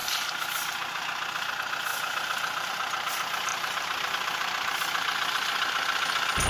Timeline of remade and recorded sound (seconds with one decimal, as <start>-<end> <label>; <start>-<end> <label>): 0.0-1.9 recorded; 1.9-2.7 remade; 2.7-3.5 recorded; 3.5-4.1 remade; 4.1-6.5 recorded